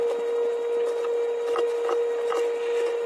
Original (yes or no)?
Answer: yes